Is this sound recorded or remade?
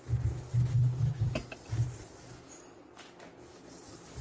recorded